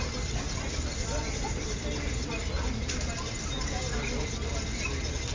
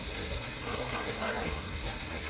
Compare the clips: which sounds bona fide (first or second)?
first